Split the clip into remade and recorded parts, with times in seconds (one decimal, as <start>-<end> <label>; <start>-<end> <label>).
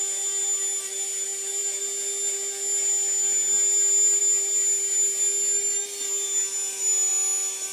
0.0-7.7 recorded